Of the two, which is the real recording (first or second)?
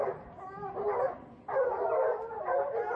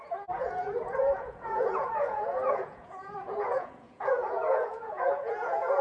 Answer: first